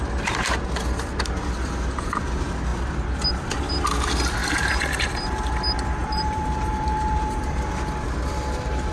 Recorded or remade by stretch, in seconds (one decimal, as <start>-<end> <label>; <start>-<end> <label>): 0.0-4.4 recorded; 4.4-5.5 remade; 5.5-6.0 recorded; 6.0-7.4 remade; 7.4-8.9 recorded